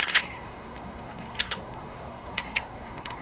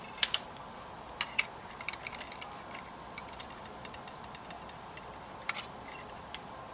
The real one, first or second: second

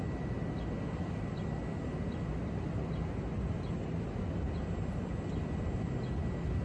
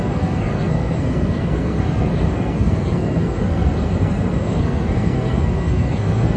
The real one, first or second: first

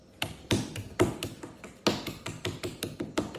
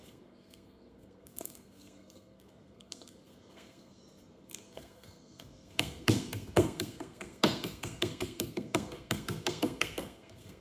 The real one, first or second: first